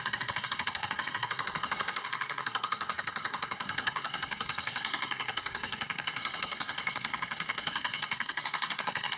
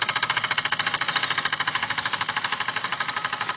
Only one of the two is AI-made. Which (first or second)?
first